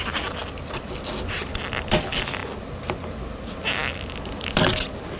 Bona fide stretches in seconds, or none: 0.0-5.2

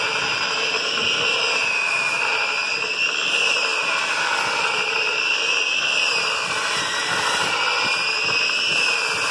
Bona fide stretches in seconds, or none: 2.7-3.3

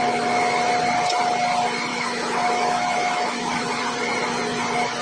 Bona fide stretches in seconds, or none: 0.0-1.9; 3.6-5.0

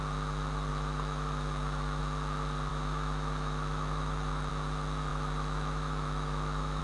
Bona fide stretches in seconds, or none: 0.0-0.7; 2.0-2.7; 4.5-5.1